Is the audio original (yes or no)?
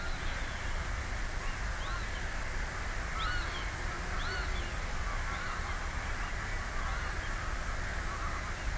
yes